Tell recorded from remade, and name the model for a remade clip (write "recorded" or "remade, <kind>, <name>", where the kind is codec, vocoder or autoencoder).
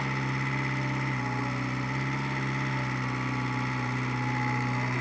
recorded